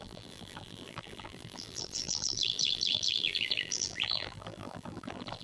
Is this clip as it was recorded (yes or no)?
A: no